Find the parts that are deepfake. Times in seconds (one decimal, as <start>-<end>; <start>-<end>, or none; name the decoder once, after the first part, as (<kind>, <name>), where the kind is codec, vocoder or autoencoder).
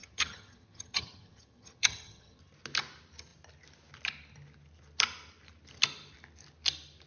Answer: 0.0-2.4 (vocoder, HiFi-GAN)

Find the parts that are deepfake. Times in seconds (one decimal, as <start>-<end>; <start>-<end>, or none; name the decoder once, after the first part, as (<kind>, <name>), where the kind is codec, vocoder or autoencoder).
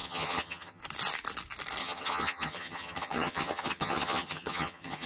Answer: 0.0-0.8 (vocoder, HiFi-GAN); 1.8-5.1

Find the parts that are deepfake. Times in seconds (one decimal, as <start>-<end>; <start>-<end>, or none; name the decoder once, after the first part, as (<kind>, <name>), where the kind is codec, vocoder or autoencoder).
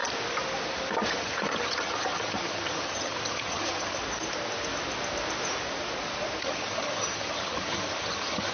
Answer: 1.1-4.0 (vocoder, HiFi-GAN); 6.4-8.5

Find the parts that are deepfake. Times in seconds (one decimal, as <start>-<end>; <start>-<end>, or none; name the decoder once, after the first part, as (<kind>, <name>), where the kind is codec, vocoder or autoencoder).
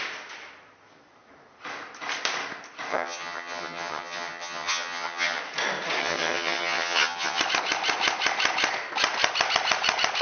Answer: 2.9-5.4 (vocoder, HiFi-GAN); 6.0-7.4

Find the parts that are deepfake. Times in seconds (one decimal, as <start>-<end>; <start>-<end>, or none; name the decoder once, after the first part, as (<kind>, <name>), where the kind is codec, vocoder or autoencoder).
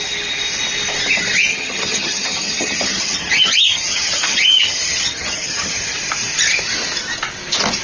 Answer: 1.5-6.0 (vocoder, HiFi-GAN)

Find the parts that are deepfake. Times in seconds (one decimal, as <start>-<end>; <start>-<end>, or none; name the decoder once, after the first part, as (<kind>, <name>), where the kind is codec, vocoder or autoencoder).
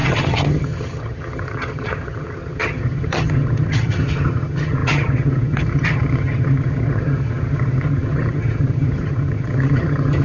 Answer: 0.0-10.2 (vocoder, HiFi-GAN)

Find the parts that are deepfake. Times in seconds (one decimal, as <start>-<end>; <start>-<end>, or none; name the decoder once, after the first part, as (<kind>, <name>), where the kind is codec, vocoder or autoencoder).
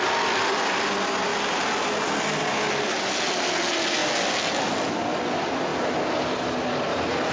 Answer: none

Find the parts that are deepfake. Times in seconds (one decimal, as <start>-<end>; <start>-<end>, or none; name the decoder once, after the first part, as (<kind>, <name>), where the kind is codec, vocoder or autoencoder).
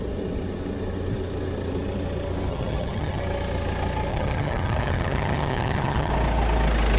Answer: 2.5-3.2 (vocoder, HiFi-GAN); 4.1-6.1